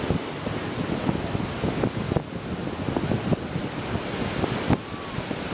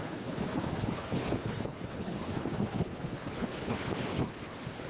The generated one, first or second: second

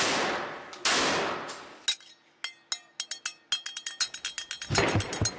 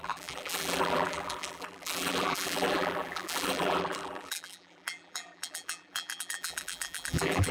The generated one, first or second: second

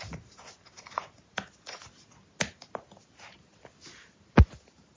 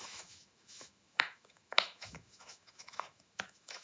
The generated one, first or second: second